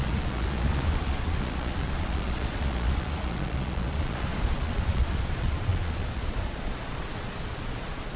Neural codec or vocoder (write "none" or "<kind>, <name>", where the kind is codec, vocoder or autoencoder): vocoder, Vocos